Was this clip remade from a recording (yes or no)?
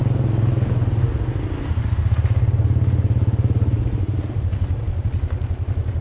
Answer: no